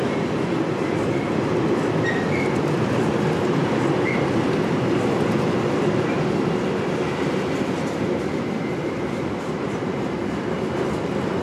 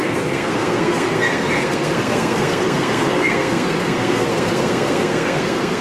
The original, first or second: first